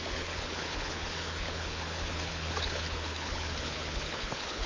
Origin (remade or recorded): remade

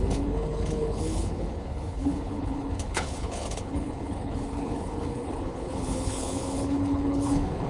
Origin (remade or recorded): remade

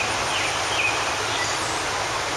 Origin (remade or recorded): recorded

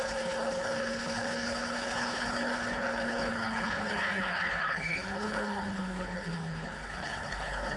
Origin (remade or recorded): remade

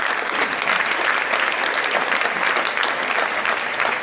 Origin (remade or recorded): recorded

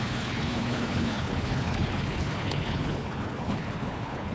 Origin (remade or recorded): remade